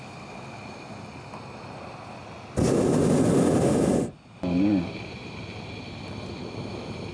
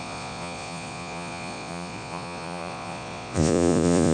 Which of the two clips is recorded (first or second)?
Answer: first